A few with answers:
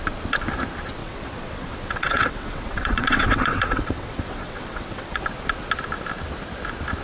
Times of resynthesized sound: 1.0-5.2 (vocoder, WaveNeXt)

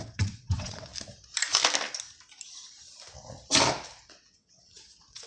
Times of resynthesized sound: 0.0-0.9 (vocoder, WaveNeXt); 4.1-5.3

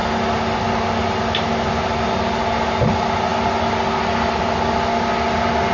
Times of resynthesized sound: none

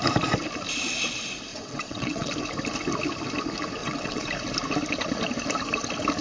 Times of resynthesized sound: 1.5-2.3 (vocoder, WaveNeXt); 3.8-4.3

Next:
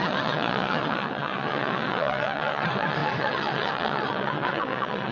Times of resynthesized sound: 0.0-5.1 (vocoder, WaveNeXt)